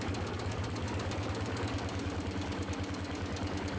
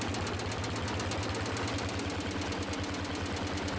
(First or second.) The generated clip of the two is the first